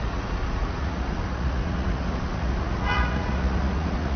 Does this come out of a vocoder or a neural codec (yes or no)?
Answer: yes